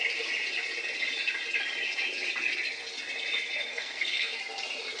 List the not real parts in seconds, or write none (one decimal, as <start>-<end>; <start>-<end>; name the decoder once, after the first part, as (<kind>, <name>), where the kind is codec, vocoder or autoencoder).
3.7-4.4 (codec, SNAC)